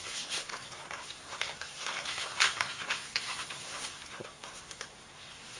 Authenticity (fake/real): fake